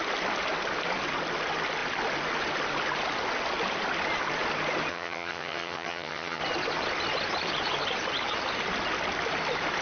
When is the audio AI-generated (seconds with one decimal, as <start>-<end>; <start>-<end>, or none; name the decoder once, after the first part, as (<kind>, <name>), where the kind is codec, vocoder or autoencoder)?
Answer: 4.9-6.4 (vocoder, HiFi-GAN)